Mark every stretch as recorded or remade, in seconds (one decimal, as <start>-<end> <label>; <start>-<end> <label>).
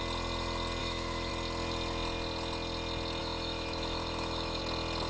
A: 0.0-0.8 recorded; 0.8-1.3 remade; 1.3-3.2 recorded; 3.2-4.6 remade; 4.6-5.1 recorded